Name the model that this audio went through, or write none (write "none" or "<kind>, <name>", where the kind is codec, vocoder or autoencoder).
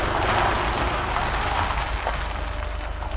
none